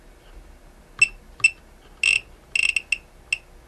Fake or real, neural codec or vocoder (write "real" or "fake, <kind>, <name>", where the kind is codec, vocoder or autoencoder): real